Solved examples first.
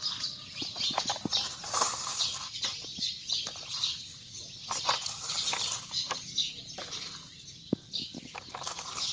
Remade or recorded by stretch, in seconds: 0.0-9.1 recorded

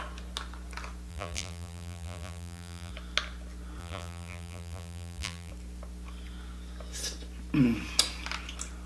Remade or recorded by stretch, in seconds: 0.0-1.1 recorded; 1.1-2.9 remade; 2.9-3.8 recorded; 3.8-5.5 remade; 5.5-8.9 recorded

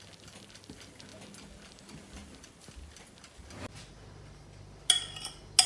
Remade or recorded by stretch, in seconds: 0.0-5.7 recorded